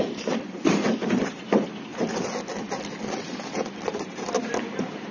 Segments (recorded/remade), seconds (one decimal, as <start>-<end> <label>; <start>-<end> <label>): 0.0-5.1 recorded